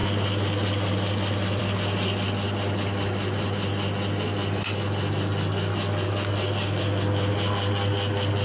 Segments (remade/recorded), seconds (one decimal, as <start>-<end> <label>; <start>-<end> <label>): 0.0-8.4 recorded